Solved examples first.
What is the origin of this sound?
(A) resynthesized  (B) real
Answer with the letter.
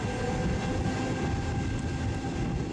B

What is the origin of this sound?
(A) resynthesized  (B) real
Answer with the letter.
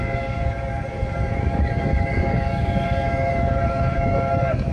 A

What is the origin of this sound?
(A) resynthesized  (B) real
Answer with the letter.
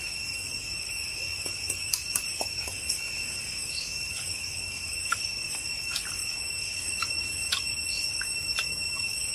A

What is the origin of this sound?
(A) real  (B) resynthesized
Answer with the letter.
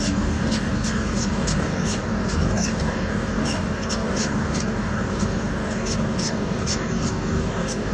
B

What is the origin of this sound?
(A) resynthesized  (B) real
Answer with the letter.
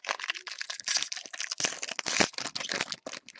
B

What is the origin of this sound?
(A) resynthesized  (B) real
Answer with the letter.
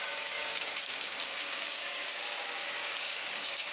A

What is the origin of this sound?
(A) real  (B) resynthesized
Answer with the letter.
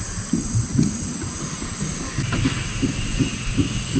A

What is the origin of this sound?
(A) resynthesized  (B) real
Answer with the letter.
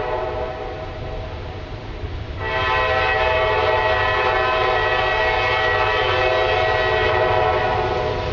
B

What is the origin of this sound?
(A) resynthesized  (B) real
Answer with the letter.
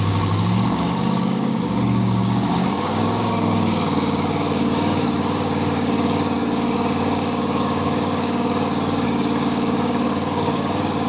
A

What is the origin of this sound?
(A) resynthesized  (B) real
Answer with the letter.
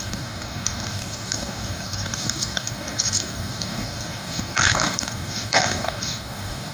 A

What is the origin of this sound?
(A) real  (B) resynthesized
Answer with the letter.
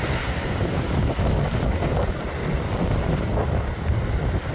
A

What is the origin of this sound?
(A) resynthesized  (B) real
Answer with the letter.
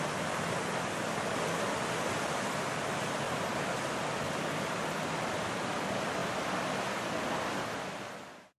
B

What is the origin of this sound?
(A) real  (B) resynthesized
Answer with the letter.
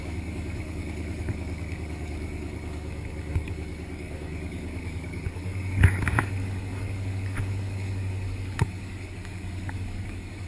B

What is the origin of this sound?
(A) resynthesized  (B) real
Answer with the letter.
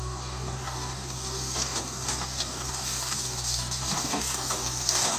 A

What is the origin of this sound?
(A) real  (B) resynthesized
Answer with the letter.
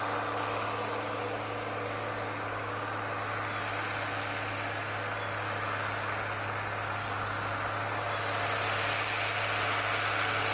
A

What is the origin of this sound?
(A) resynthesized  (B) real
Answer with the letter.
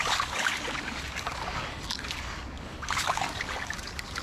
A